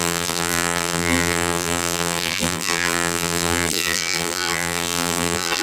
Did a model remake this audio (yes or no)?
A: yes